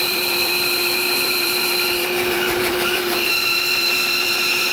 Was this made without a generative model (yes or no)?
no